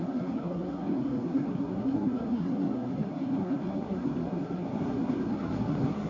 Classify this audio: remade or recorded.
remade